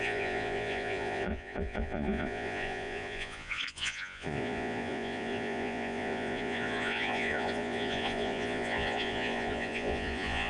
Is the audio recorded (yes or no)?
no